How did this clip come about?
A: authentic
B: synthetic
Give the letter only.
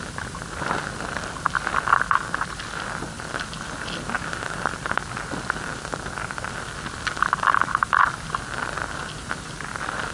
A